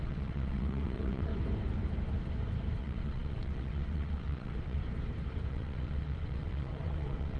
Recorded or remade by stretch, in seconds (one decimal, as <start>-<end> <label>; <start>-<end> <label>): 0.0-1.3 remade; 1.3-2.8 recorded; 2.8-4.8 remade; 4.8-5.5 recorded; 5.5-7.4 remade